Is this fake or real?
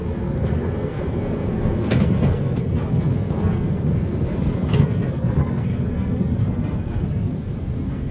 fake